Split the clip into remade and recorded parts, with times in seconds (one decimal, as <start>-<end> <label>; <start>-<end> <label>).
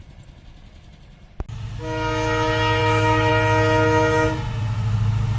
0.0-2.8 recorded; 2.8-3.3 remade; 3.3-5.4 recorded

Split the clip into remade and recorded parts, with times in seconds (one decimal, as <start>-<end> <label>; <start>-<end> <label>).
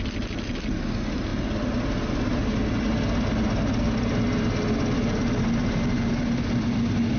0.0-7.2 recorded